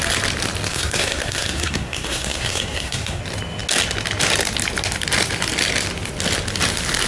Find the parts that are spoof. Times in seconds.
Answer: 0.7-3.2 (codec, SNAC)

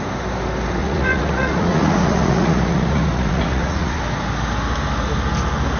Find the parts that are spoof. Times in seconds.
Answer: 0.8-4.0 (vocoder, Vocos)

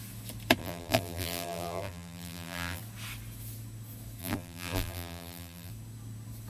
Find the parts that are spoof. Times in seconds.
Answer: 0.6-2.8 (vocoder, BigVGAN v2); 4.2-5.7

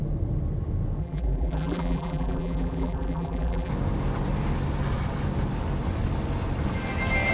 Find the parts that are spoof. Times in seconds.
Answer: 1.0-3.7 (vocoder, BigVGAN v2)

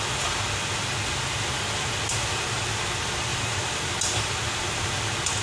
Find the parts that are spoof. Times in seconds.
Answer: 3.3-3.9 (vocoder, BigVGAN v2)

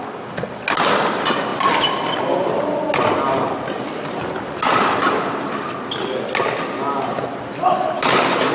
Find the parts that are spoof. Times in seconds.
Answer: none

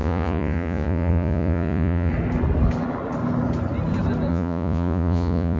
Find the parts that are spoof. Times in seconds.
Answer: 0.0-2.1 (vocoder, Vocos); 4.3-5.6

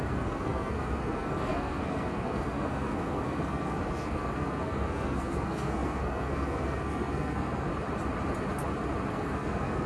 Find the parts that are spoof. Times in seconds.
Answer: 0.0-7.7 (codec, SNAC); 9.1-9.9